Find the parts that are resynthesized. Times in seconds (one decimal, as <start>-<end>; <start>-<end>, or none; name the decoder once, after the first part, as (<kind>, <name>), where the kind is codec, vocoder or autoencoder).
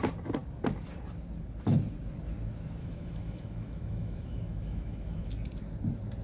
2.8-5.3 (autoencoder, DAC-VAE)